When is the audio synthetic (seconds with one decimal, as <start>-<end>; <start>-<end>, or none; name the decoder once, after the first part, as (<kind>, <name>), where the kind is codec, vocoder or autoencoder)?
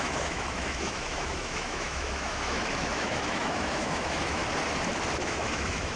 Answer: 0.0-4.4 (autoencoder, DAC-VAE); 5.2-6.0